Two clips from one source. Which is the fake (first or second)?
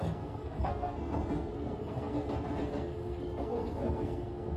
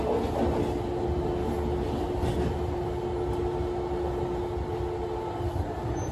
first